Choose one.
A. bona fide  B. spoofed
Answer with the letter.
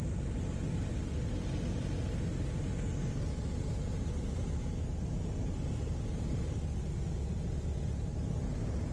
A